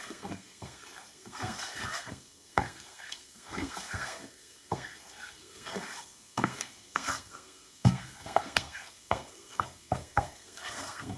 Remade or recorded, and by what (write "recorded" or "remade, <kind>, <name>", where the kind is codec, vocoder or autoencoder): remade, codec, SNAC